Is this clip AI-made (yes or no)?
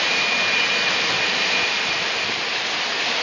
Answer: yes